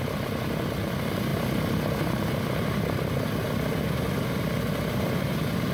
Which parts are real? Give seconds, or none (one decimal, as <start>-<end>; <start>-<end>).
0.0-5.7